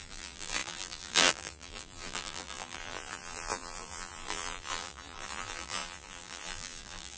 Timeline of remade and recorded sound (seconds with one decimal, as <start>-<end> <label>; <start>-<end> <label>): 0.0-7.2 remade